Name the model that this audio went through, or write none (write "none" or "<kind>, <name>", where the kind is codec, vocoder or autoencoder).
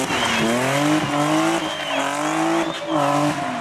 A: none